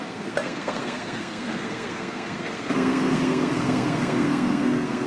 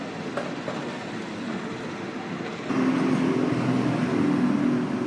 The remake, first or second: first